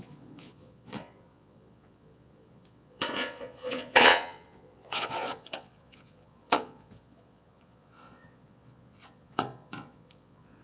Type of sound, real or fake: fake